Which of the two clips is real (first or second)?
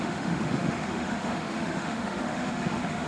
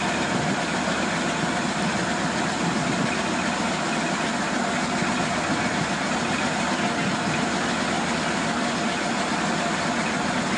second